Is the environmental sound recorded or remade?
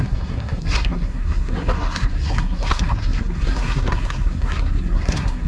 remade